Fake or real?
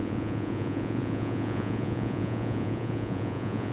fake